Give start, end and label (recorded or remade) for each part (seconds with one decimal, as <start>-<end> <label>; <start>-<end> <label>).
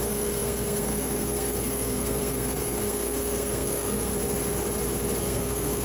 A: 0.0-4.1 remade; 4.1-5.2 recorded; 5.2-5.8 remade